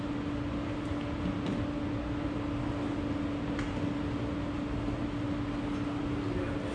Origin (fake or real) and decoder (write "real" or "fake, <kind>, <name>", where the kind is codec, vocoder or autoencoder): real